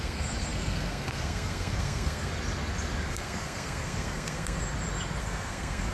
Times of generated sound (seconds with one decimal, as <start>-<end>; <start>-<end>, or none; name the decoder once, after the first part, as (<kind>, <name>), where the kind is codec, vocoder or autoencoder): 0.0-2.3 (codec, SNAC); 3.1-4.6; 5.2-5.9